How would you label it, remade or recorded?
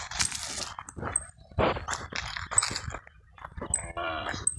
recorded